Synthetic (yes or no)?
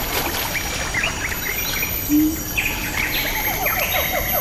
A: no